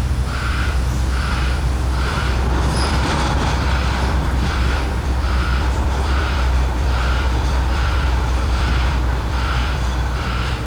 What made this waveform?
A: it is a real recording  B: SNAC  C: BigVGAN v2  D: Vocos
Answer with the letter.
C